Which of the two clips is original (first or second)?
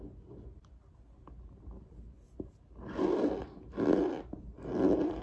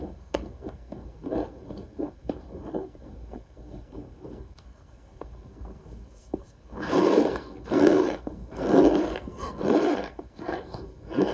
first